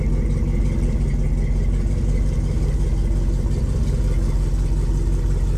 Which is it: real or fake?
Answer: real